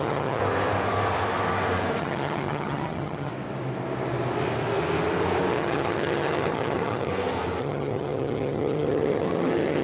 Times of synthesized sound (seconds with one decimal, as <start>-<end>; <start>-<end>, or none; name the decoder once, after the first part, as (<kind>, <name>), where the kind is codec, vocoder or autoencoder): 0.0-0.4 (vocoder, HiFi-GAN); 2.0-3.3; 5.5-7.1; 7.6-9.8